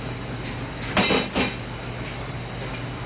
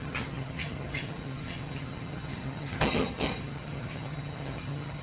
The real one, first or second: first